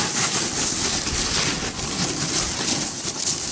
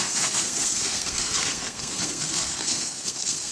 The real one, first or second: first